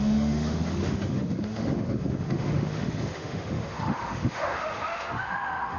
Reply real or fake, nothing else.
fake